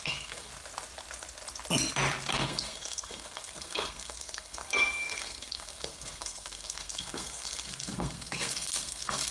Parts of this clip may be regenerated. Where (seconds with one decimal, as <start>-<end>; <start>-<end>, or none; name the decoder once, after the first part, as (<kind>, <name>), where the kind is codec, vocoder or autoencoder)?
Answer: 0.0-0.5 (codec, SNAC); 2.3-9.3